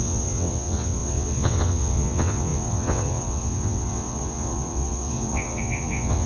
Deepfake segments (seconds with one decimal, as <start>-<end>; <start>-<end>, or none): 0.0-6.3